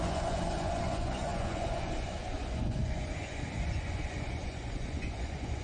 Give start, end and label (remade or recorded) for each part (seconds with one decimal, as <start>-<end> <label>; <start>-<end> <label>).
0.0-5.6 remade